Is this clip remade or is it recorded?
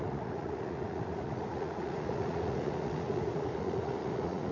remade